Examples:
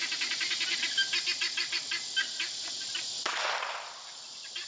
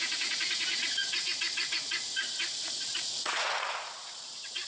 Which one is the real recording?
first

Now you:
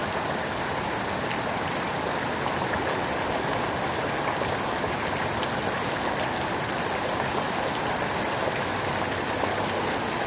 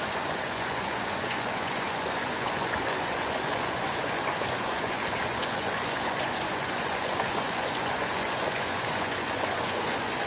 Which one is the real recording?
first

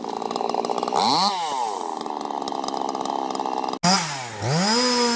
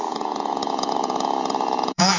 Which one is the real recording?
first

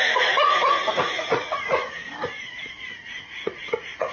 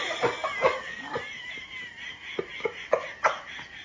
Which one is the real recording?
second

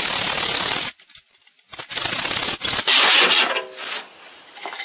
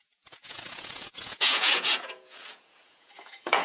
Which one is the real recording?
first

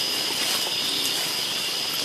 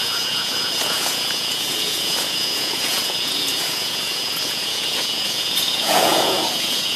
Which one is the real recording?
first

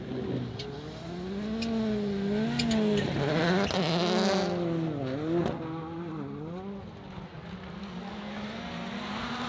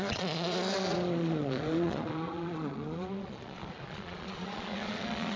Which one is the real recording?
first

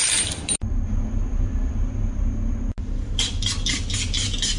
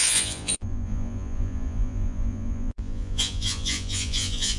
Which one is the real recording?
first